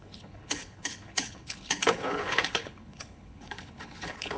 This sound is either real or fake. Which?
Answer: fake